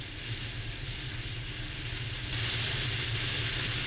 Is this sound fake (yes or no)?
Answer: no